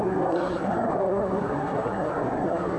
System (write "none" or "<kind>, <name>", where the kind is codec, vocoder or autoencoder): codec, SNAC